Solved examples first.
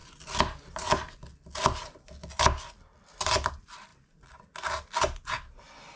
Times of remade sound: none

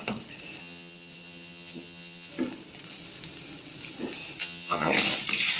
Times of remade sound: 0.6-2.3 (vocoder, HiFi-GAN); 4.4-4.9

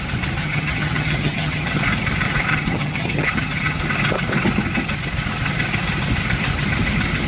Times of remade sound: 0.4-1.8 (vocoder, HiFi-GAN); 2.5-3.8

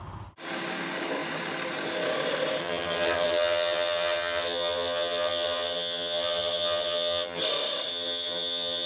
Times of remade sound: 2.6-7.4 (vocoder, HiFi-GAN); 7.9-8.9